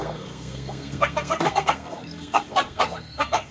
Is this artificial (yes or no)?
yes